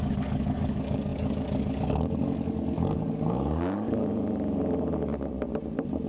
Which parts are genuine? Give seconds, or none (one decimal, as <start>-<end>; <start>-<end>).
4.1-6.1